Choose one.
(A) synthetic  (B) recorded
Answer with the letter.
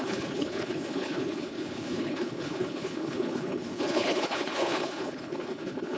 A